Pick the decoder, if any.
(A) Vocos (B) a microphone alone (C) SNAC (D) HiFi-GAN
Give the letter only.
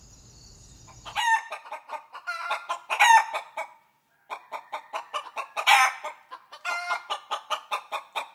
B